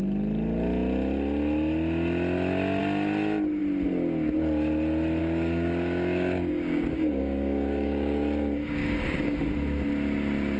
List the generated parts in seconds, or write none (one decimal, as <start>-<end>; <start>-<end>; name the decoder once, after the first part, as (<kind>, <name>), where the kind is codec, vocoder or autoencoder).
5.2-9.4 (codec, DAC)